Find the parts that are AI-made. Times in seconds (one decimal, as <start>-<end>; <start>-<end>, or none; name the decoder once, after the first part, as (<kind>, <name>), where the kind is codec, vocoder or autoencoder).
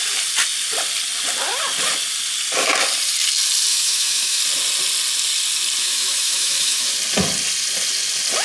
3.7-4.4 (autoencoder, DAC-VAE); 5.8-6.9